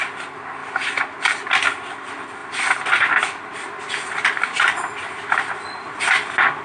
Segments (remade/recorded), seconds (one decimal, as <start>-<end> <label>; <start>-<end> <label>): 0.0-6.6 recorded